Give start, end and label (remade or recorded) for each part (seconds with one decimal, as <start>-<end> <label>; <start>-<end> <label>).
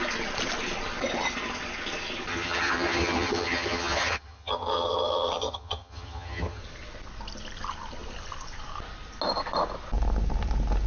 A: 0.0-2.3 recorded; 2.3-6.6 remade; 6.6-10.9 recorded